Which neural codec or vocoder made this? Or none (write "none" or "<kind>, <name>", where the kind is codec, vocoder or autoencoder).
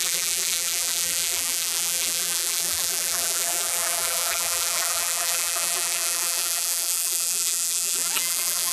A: vocoder, BigVGAN v2